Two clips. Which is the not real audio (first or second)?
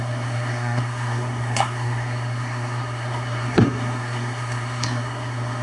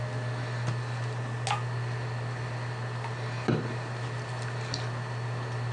first